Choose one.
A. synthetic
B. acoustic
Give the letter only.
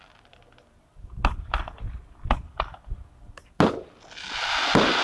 B